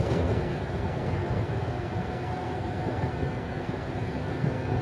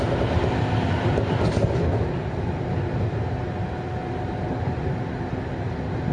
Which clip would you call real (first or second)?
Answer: second